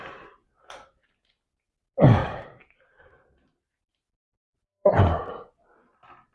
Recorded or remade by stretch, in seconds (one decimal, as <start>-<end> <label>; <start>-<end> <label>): 0.0-2.2 recorded; 2.2-3.7 remade; 3.7-4.5 recorded; 4.5-5.2 remade; 5.2-6.3 recorded